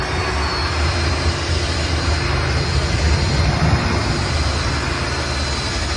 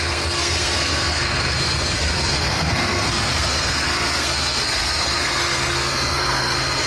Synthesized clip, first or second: second